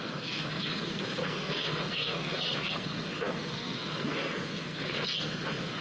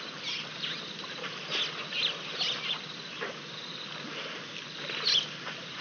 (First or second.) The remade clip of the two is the first